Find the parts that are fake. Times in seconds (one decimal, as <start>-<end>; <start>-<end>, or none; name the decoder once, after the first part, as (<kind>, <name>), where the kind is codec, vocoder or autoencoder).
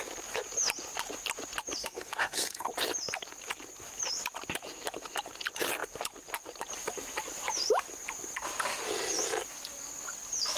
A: 1.8-2.7 (codec, SNAC)